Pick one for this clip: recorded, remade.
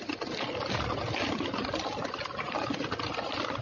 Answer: recorded